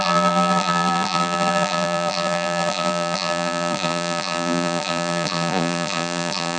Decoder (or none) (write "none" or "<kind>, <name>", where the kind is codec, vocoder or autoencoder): vocoder, BigVGAN v2